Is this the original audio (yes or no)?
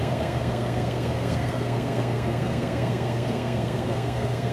no